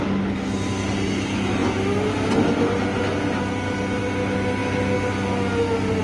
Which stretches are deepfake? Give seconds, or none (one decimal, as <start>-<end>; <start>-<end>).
none